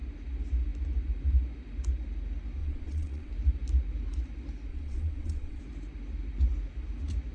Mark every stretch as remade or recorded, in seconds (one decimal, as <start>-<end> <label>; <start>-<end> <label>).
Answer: 0.0-2.6 recorded; 2.6-3.3 remade; 3.3-4.7 recorded; 4.7-5.6 remade; 5.6-7.3 recorded